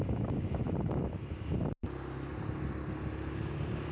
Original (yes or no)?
yes